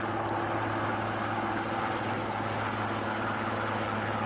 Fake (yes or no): no